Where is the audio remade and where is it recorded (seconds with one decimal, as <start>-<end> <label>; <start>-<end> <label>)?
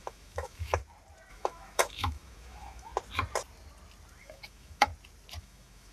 0.0-0.8 remade; 0.8-1.3 recorded; 1.3-2.9 remade; 2.9-4.2 recorded; 4.2-4.9 remade; 4.9-5.4 recorded; 5.4-5.9 remade